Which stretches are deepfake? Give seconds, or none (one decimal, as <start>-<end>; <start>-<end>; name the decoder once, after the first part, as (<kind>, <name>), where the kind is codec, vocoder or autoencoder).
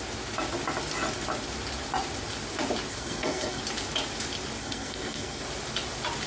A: 2.9-3.6 (codec, SNAC); 4.6-5.4